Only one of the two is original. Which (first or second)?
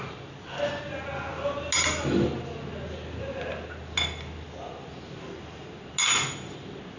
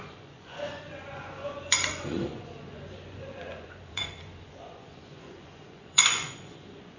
first